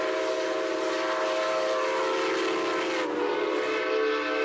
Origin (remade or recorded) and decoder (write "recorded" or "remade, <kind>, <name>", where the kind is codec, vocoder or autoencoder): recorded